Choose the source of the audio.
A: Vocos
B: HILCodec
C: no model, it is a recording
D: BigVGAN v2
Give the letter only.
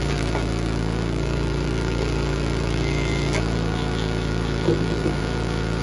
D